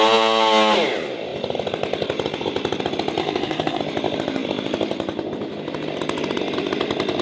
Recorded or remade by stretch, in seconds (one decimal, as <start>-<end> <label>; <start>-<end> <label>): 0.0-3.2 recorded; 3.2-3.8 remade; 3.8-7.2 recorded